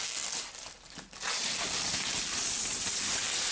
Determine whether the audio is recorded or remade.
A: recorded